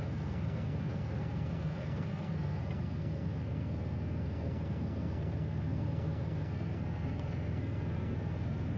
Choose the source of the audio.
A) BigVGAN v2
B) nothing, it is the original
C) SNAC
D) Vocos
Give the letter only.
C